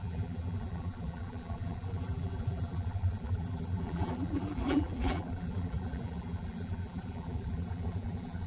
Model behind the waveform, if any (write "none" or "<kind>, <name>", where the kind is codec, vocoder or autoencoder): vocoder, BigVGAN v2